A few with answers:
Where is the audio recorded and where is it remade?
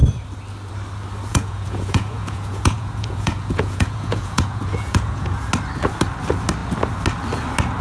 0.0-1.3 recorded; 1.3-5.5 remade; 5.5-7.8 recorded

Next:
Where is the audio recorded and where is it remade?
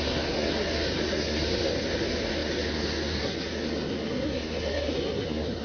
0.0-5.6 remade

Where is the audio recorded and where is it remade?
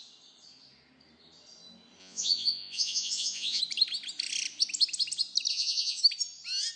0.0-2.0 recorded; 2.0-3.6 remade; 3.6-5.5 recorded; 5.5-6.0 remade; 6.0-6.8 recorded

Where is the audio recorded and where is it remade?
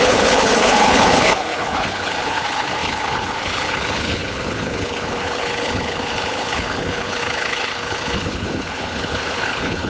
0.0-9.9 remade